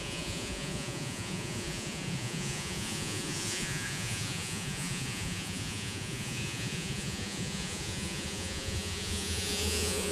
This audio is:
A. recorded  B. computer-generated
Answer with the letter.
B